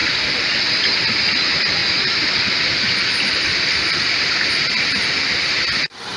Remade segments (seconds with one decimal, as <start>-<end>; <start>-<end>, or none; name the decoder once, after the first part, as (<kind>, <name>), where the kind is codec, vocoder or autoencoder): 0.7-6.2 (vocoder, BigVGAN v2)